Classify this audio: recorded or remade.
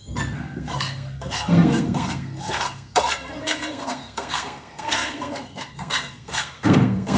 remade